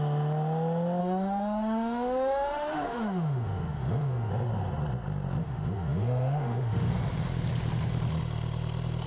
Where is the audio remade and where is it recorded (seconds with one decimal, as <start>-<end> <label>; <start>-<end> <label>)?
0.0-1.0 recorded; 1.0-4.3 remade; 4.3-5.4 recorded; 5.4-6.9 remade; 6.9-9.1 recorded